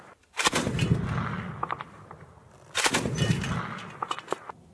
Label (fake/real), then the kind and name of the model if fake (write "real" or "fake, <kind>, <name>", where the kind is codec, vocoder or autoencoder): real